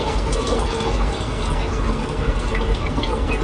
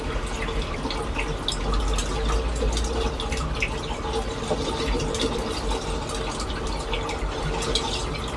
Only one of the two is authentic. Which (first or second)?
second